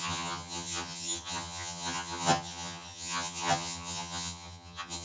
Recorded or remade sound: remade